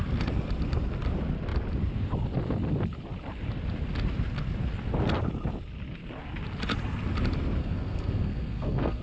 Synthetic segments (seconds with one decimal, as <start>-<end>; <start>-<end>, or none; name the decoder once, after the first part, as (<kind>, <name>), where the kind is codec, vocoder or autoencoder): 7.6-9.0 (codec, SNAC)